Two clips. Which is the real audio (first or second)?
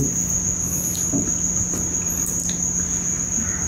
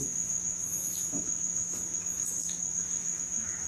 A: first